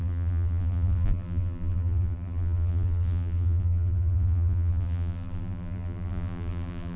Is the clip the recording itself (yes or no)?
no